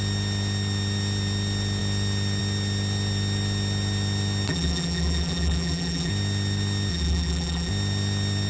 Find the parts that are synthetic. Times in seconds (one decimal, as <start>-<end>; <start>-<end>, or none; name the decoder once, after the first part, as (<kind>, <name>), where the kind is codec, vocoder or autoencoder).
4.5-6.1 (vocoder, BigVGAN v2); 6.9-7.7